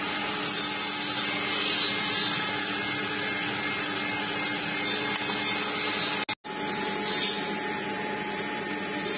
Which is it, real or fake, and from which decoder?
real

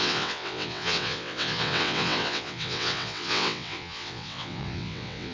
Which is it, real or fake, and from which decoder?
fake, vocoder, WaveNeXt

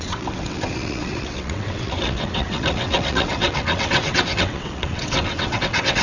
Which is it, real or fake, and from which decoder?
fake, vocoder, WaveNeXt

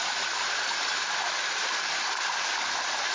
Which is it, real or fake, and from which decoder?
real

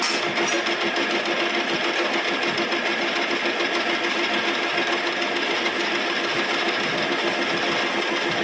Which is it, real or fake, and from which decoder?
real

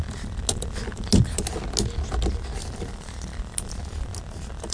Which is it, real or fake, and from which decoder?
real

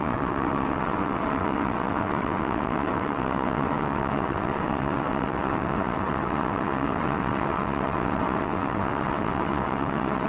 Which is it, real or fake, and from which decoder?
fake, vocoder, WaveNeXt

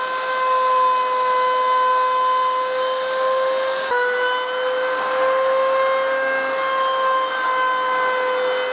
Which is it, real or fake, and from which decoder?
real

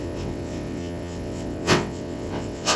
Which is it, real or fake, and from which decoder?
fake, vocoder, WaveNeXt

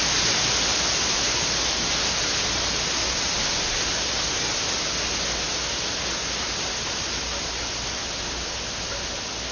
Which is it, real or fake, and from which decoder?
real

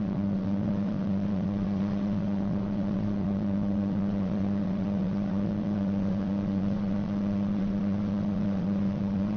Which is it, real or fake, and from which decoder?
fake, vocoder, WaveNeXt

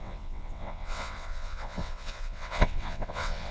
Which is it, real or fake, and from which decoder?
fake, vocoder, WaveNeXt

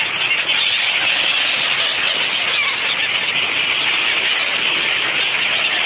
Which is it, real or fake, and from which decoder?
real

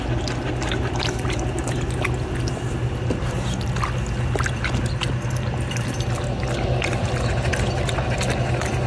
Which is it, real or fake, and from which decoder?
real